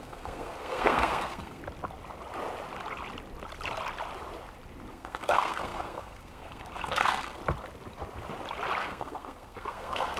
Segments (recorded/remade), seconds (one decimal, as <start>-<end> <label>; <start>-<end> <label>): 0.0-1.6 remade; 1.6-4.9 recorded; 4.9-7.4 remade; 7.4-8.8 recorded; 8.8-10.2 remade